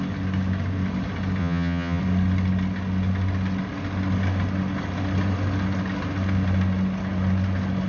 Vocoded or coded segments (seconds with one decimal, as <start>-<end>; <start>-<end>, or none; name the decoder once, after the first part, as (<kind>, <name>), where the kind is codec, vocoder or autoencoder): 1.4-2.0 (vocoder, HiFi-GAN)